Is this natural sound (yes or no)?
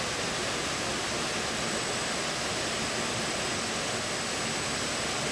yes